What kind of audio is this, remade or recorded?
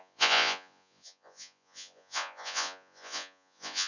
remade